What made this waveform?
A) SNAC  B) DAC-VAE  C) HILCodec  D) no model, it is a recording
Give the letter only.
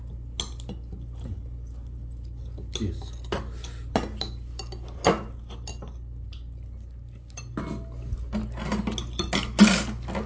D